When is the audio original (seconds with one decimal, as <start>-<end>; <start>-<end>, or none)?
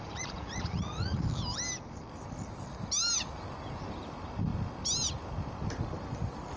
1.2-6.6